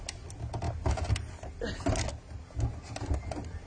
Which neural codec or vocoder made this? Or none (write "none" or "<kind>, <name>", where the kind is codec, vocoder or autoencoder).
none